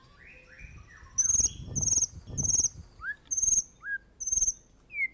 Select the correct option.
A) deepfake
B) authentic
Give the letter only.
B